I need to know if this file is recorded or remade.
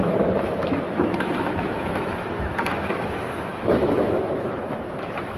remade